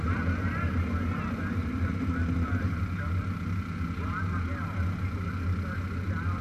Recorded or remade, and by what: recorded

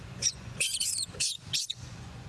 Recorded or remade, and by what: remade, vocoder, Vocos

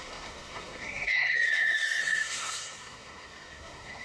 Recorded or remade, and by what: remade, codec, SNAC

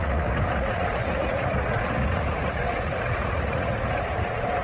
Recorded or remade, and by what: remade, vocoder, Vocos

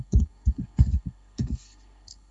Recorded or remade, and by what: remade, codec, SNAC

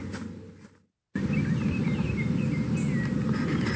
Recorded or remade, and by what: recorded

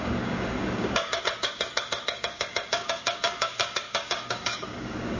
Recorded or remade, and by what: remade, codec, DAC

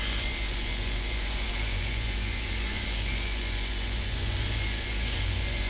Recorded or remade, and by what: remade, vocoder, Vocos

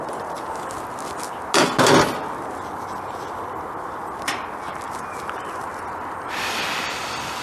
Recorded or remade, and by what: recorded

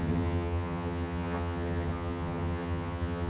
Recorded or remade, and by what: remade, vocoder, HiFi-GAN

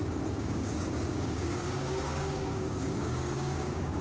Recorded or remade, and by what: remade, codec, DAC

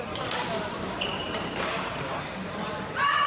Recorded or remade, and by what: remade, vocoder, BigVGAN v2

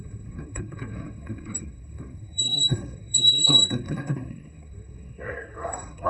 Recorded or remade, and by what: remade, codec, SNAC